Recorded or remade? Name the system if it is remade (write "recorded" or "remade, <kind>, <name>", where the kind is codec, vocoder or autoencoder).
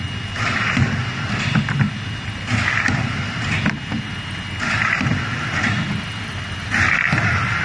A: recorded